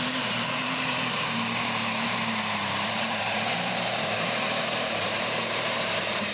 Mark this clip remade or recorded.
remade